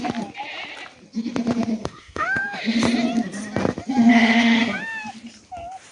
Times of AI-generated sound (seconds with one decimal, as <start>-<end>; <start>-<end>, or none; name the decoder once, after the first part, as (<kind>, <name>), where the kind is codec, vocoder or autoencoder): 1.8-2.8 (autoencoder, DAC-VAE); 4.1-4.6